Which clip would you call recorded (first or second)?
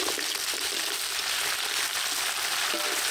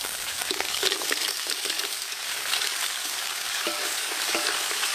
first